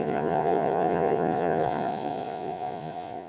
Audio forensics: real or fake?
fake